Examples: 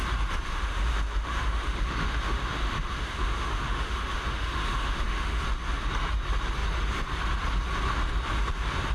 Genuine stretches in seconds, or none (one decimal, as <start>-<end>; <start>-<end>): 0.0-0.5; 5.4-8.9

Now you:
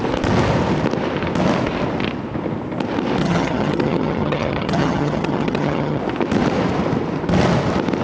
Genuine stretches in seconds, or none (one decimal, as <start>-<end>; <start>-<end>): 0.0-3.2; 6.0-8.0

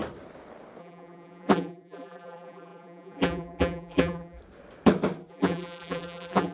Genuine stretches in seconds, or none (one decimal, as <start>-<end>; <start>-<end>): 0.0-0.8; 4.4-5.3

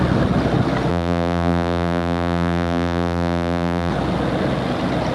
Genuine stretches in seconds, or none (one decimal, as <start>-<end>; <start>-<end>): 0.0-0.9; 3.9-5.1

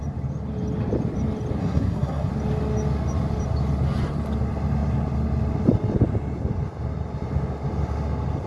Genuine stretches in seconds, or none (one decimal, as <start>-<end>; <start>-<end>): 0.0-1.6; 2.3-8.5